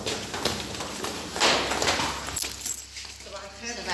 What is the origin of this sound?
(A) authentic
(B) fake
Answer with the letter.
A